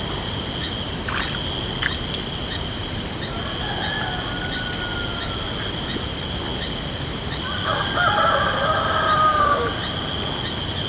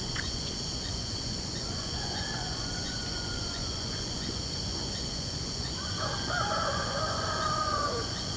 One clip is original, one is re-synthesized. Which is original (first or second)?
first